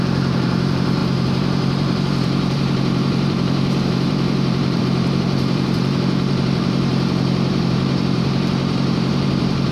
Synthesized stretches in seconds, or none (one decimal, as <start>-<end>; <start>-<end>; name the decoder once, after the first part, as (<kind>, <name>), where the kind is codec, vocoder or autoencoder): 0.0-6.9 (vocoder, BigVGAN v2); 7.5-9.7